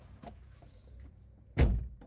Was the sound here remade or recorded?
remade